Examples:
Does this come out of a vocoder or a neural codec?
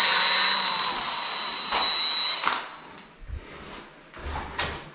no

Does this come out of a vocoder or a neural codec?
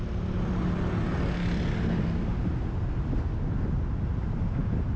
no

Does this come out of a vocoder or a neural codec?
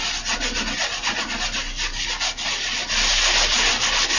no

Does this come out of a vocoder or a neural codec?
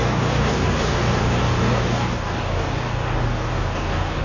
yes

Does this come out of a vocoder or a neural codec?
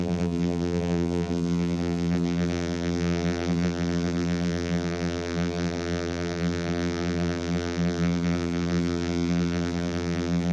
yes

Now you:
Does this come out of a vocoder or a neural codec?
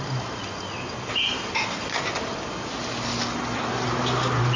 no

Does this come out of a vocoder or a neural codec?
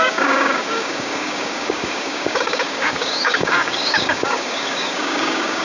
yes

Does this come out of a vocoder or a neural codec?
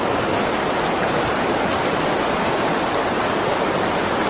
no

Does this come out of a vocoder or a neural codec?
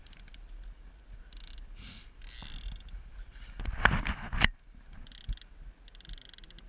no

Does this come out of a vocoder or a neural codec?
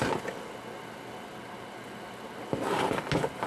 no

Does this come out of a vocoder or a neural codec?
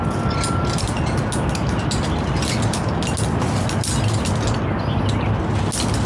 no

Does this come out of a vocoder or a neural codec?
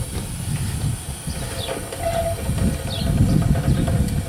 no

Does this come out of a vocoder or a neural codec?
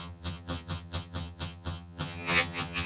yes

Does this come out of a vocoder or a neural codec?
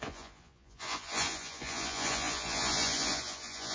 yes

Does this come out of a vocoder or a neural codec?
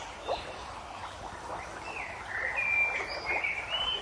no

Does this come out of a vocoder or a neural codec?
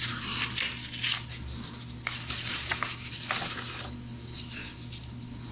no